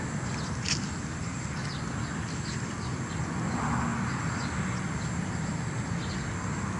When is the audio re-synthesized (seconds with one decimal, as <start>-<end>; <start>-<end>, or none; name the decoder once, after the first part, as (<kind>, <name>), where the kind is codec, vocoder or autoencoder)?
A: 3.9-5.6 (vocoder, BigVGAN v2)